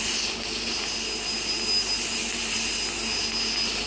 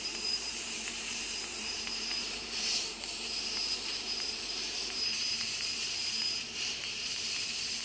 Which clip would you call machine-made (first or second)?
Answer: second